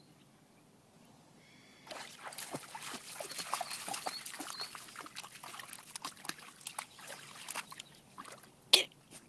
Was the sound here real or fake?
real